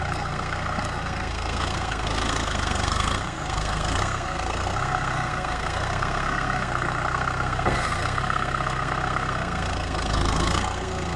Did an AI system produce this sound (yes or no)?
yes